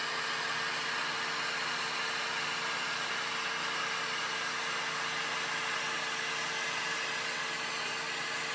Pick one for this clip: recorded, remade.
recorded